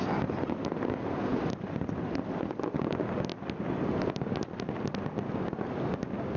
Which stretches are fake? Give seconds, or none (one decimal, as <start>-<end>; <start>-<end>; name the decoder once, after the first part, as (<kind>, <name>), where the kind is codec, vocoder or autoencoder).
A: none